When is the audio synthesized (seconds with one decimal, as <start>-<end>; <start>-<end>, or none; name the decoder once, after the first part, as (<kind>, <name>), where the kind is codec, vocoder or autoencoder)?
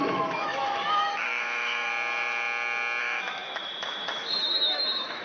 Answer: 0.0-1.9 (autoencoder, DAC-VAE); 3.0-5.2